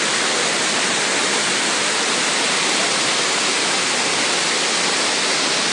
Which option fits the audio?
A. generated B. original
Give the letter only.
B